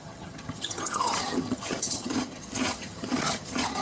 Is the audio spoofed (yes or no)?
yes